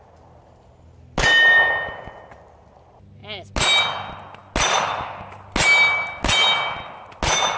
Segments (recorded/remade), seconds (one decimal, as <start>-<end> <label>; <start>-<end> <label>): 0.0-7.6 recorded